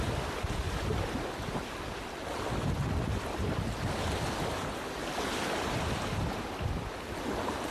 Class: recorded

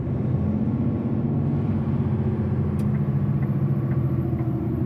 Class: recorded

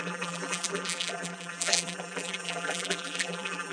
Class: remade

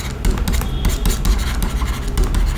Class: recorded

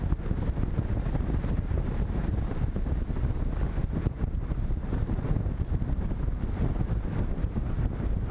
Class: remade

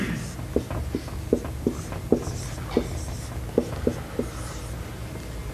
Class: recorded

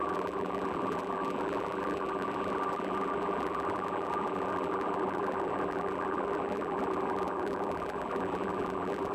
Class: remade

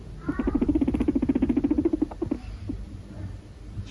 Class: remade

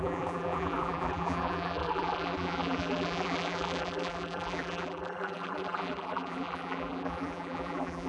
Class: remade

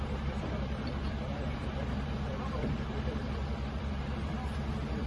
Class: remade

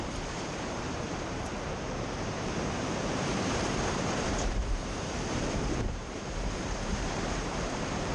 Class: remade